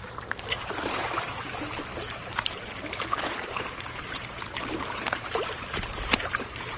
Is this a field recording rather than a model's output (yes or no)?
no